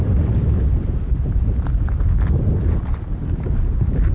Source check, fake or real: real